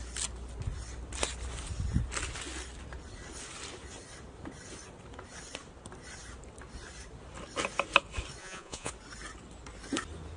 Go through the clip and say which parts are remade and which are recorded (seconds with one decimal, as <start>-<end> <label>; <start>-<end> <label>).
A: 0.0-8.4 recorded; 8.4-8.9 remade; 8.9-10.4 recorded